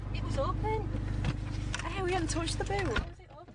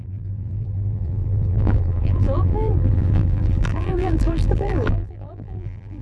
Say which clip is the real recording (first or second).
first